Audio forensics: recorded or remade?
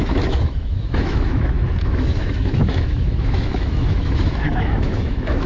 remade